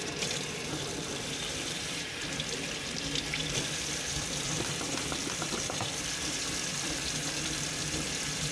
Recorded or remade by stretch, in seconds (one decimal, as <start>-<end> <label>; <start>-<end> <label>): 0.0-8.5 remade